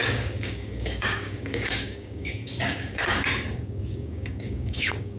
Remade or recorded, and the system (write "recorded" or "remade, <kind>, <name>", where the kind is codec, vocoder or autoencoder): remade, codec, DAC